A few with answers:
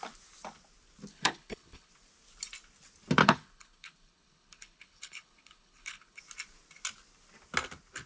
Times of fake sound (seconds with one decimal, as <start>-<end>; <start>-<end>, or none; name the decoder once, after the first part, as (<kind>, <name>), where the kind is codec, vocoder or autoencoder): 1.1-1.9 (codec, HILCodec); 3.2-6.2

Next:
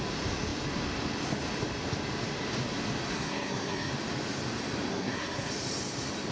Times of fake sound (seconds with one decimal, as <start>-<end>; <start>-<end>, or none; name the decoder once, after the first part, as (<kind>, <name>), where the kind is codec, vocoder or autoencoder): 3.1-3.9 (codec, SNAC); 4.9-5.5

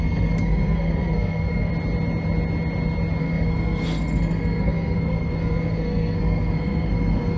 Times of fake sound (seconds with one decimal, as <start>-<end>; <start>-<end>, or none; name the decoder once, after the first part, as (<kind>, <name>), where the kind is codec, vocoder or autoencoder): 0.0-1.7 (codec, SNAC); 3.2-7.4